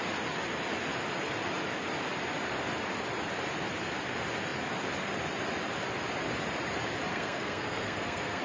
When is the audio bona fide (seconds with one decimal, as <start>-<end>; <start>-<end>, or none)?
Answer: 0.0-7.1